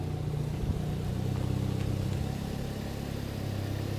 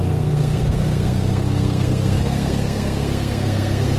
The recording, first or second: first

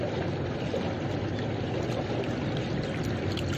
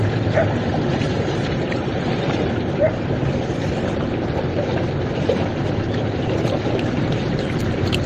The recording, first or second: first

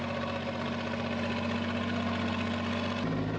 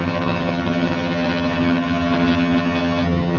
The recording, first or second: first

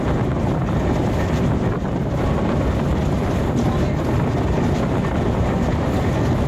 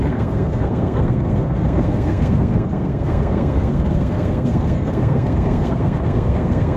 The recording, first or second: first